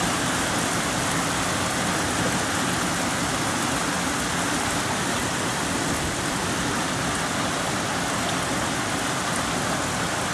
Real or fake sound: real